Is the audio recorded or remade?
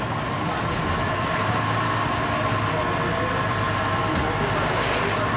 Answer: recorded